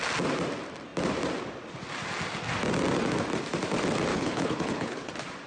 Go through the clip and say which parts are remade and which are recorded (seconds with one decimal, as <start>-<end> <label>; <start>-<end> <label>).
0.0-4.1 recorded; 4.1-5.1 remade; 5.1-5.5 recorded